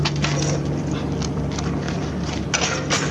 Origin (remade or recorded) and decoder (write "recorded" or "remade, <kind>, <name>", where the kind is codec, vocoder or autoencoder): recorded